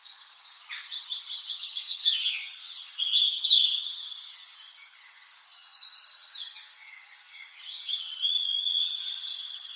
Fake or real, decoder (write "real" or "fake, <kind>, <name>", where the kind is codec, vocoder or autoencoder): fake, vocoder, HiFi-GAN